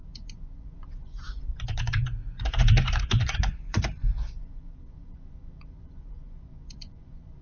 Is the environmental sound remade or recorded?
remade